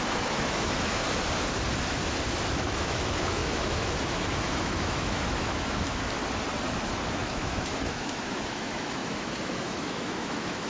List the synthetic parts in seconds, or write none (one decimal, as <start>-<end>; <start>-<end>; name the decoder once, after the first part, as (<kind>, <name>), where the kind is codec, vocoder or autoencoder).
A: 0.0-1.0 (autoencoder, DAC-VAE); 2.5-6.2; 7.1-10.7